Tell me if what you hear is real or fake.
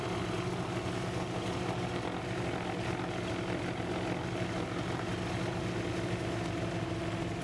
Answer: real